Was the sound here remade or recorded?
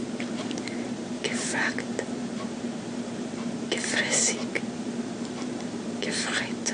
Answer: remade